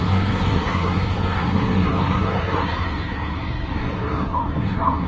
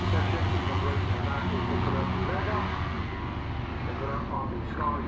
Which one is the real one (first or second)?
second